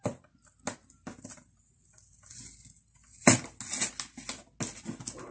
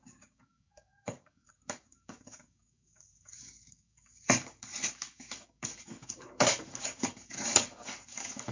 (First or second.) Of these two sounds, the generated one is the second